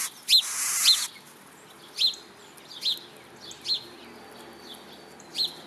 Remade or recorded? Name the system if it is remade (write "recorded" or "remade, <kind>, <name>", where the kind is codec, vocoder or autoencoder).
recorded